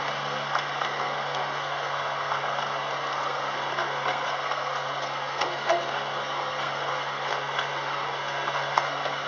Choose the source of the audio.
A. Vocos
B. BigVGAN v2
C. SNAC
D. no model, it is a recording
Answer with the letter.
C